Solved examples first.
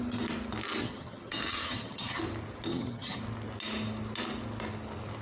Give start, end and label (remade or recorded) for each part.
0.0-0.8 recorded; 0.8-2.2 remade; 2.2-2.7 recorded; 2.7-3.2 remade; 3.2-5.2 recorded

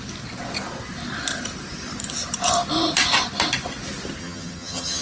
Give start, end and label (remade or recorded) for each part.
0.0-4.2 recorded; 4.2-5.0 remade

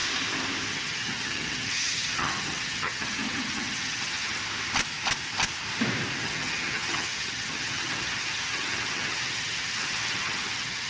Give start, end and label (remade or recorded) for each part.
0.0-0.7 recorded; 0.7-4.4 remade; 4.4-6.2 recorded; 6.2-10.9 remade